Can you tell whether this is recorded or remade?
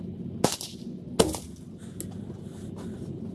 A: recorded